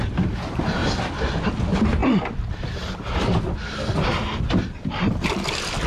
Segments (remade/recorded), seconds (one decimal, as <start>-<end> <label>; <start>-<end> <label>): 0.0-5.9 recorded